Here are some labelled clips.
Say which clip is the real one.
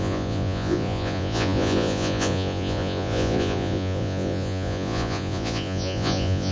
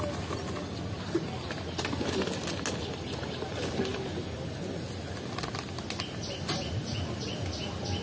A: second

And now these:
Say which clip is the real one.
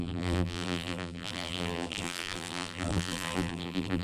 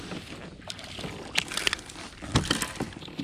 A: second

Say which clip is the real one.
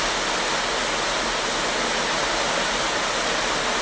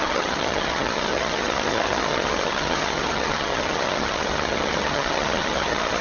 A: first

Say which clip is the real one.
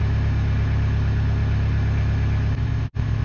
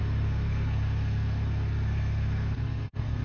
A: first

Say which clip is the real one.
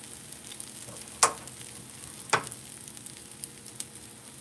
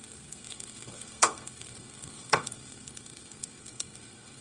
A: first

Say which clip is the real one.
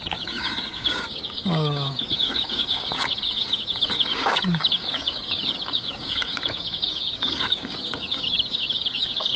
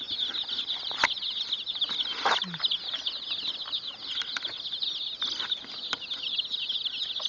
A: second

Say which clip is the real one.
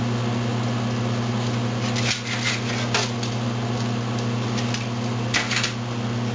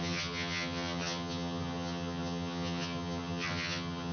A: first